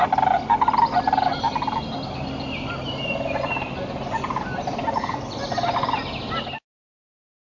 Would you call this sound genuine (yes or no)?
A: yes